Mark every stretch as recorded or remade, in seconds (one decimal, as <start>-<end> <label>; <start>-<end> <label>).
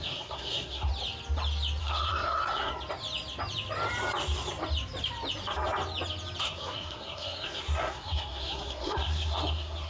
0.0-0.9 remade; 0.9-1.8 recorded; 1.8-2.7 remade; 2.7-6.4 recorded; 6.4-9.9 remade